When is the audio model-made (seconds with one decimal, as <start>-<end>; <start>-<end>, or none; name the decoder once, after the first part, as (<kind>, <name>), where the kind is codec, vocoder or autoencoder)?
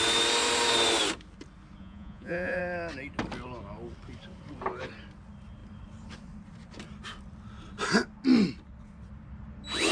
1.8-2.6 (vocoder, Vocos)